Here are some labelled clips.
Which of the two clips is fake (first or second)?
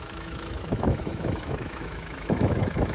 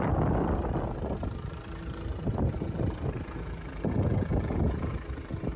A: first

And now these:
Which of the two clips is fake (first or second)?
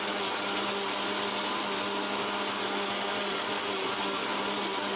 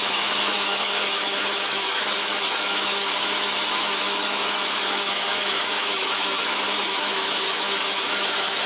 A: second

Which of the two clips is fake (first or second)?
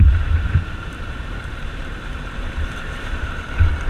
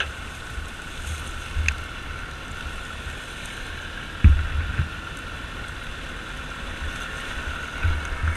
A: first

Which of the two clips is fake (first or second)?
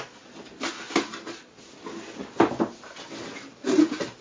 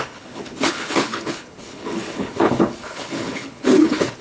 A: second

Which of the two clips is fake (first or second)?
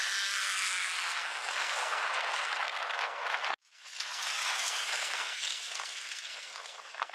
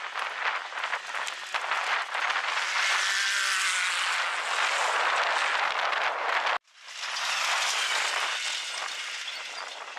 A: first